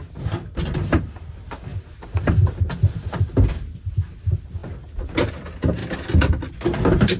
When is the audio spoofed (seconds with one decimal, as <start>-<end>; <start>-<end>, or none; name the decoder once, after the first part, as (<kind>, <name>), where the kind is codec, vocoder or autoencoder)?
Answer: none